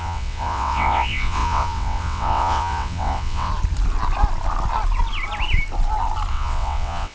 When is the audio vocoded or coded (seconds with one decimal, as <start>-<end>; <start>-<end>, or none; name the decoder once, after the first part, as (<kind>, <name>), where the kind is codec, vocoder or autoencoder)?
0.0-3.5 (vocoder, WaveNeXt); 6.3-7.1